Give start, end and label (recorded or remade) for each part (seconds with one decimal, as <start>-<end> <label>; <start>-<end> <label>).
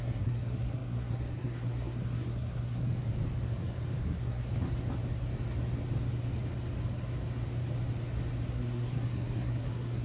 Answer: 0.0-2.9 remade; 2.9-4.0 recorded; 4.0-4.4 remade; 4.4-8.5 recorded; 8.5-10.0 remade